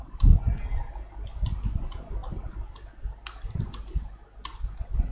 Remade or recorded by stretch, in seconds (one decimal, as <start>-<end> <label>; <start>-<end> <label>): 0.0-5.1 recorded